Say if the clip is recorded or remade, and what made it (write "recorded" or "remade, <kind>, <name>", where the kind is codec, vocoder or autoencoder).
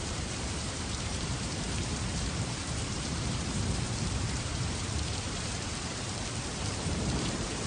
remade, vocoder, BigVGAN v2